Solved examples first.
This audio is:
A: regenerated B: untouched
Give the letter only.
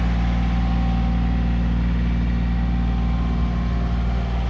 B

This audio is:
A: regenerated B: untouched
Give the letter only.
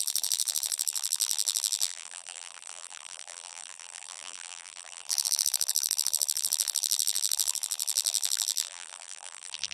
A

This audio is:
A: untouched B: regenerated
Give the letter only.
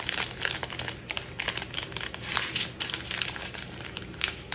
A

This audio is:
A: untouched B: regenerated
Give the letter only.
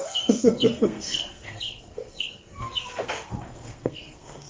B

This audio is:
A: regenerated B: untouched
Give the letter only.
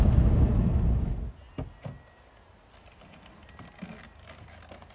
B